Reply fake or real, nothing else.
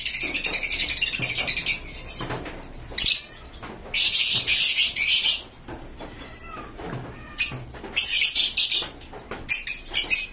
real